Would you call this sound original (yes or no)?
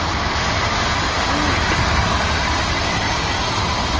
yes